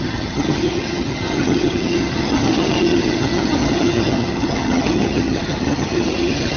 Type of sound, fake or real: fake